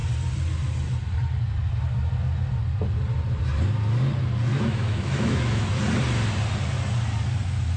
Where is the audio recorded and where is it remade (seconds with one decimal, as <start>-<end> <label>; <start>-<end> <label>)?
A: 0.0-4.5 recorded; 4.5-5.7 remade; 5.7-7.8 recorded